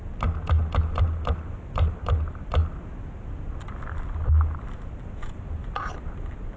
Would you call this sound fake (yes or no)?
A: no